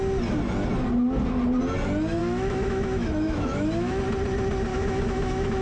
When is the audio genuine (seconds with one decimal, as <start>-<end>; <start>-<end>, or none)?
0.0-2.2; 4.0-4.7